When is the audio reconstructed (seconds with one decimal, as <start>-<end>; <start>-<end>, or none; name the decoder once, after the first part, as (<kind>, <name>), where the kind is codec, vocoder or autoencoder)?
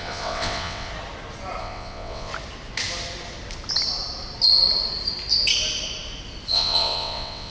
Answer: 0.0-0.9 (vocoder, WaveNeXt); 1.6-2.3; 6.5-7.5